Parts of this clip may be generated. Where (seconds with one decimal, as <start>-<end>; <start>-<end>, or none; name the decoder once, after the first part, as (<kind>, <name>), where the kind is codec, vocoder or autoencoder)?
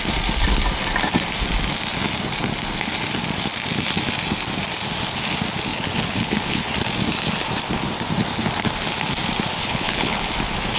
5.7-6.7 (codec, HILCodec); 9.6-10.3